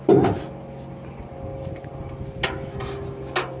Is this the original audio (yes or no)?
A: yes